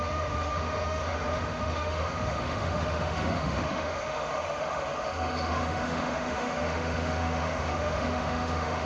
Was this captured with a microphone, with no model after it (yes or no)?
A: no